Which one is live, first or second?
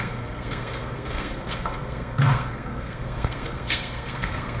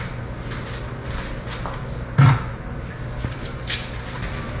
second